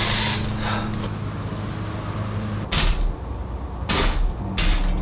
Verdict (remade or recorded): recorded